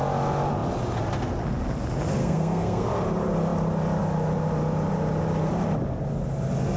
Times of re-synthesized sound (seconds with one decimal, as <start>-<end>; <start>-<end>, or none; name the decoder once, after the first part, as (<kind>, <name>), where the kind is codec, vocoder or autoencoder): 2.2-2.9 (codec, SNAC)